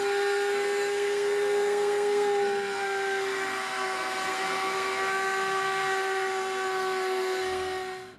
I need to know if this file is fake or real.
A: fake